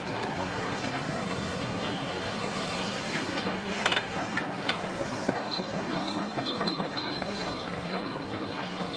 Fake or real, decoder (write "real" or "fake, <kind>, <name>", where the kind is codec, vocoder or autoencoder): fake, codec, SNAC